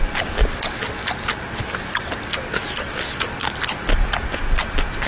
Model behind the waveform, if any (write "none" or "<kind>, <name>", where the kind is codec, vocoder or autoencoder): none